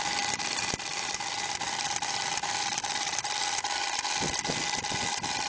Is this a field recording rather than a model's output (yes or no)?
yes